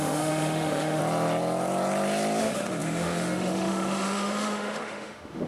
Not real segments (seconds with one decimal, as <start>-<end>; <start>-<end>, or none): 0.0-1.0; 2.4-5.5